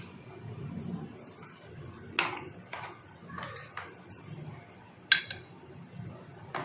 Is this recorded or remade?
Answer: recorded